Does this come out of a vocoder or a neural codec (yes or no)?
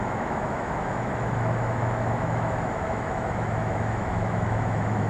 yes